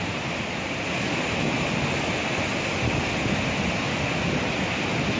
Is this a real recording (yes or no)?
yes